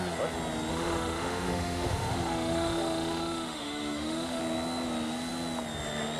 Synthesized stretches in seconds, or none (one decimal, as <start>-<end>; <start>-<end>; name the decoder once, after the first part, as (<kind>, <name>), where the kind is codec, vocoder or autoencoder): 0.7-4.4 (autoencoder, DAC-VAE)